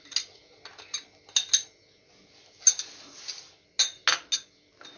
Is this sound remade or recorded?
recorded